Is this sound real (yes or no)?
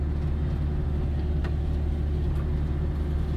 yes